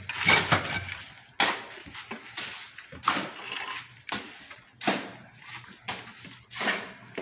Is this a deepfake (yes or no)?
no